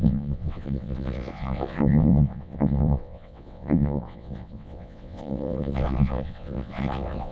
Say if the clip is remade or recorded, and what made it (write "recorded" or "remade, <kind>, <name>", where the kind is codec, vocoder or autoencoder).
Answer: remade, vocoder, WaveNeXt